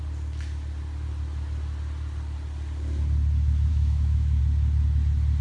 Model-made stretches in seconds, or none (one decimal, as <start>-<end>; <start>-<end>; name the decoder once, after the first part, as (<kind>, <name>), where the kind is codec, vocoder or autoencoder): 3.7-4.4 (autoencoder, DAC-VAE)